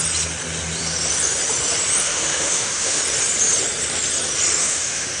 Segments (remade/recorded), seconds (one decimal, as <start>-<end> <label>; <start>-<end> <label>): 0.0-2.0 recorded; 2.0-3.0 remade; 3.0-4.6 recorded; 4.6-5.2 remade